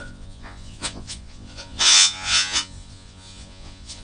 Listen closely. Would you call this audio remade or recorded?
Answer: remade